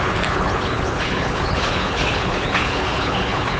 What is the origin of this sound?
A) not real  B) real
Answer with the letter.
A